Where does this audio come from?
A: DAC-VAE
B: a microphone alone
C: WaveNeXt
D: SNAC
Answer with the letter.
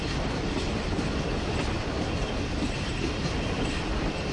B